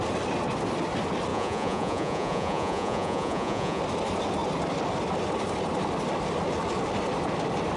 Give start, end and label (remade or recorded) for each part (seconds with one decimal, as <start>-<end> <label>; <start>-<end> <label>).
0.0-1.3 recorded; 1.3-3.8 remade; 3.8-7.8 recorded